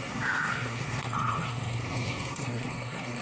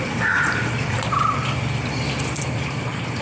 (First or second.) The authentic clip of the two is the second